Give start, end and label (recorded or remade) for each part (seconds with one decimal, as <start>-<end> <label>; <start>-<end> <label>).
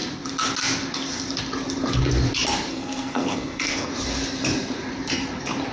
0.0-2.7 recorded; 2.7-3.9 remade; 3.9-5.7 recorded